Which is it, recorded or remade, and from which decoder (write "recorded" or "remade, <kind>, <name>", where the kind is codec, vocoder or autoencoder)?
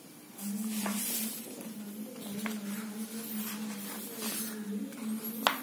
recorded